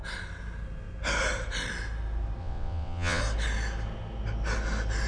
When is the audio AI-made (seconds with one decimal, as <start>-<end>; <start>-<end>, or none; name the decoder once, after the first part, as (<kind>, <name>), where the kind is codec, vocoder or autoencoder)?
2.4-3.2 (vocoder, WaveNeXt)